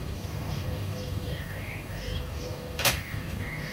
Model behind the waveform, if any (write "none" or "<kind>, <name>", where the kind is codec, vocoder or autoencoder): codec, DAC